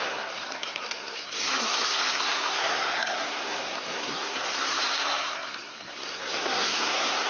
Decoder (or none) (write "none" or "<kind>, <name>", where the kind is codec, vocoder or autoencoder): codec, SNAC